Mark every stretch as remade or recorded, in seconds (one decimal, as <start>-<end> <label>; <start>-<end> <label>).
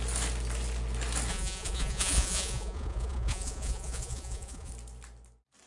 0.0-1.3 recorded; 1.3-4.7 remade; 4.7-5.7 recorded